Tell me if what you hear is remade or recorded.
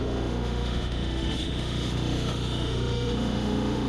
remade